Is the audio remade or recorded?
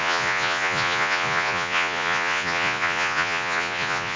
remade